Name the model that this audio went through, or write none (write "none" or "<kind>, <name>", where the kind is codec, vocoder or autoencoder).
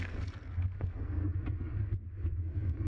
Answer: codec, SNAC